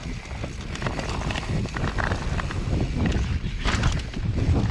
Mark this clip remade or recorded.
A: recorded